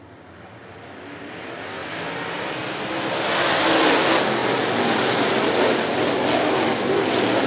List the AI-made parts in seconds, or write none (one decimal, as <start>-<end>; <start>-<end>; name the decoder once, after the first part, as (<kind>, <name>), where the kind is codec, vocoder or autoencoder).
none